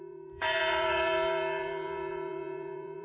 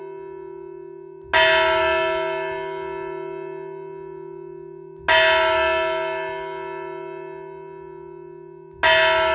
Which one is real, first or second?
second